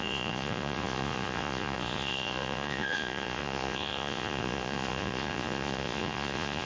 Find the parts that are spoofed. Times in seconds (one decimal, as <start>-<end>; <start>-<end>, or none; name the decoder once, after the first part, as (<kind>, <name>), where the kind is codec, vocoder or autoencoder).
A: 0.0-6.7 (vocoder, Vocos)